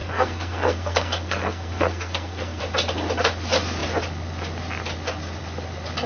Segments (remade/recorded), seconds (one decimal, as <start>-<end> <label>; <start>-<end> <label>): 0.0-2.6 remade; 2.6-6.1 recorded